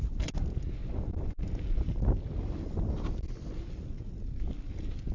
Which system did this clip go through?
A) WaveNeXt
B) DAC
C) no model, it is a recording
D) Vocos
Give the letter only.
C